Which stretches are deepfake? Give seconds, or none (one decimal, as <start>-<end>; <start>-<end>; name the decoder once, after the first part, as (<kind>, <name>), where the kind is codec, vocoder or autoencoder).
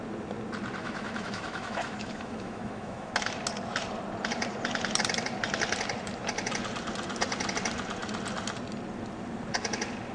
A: 0.8-3.1 (autoencoder, DAC-VAE)